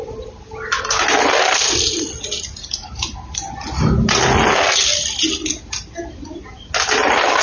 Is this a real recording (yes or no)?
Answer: yes